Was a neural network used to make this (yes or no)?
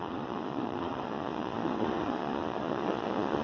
yes